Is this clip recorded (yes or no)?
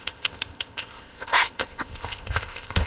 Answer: no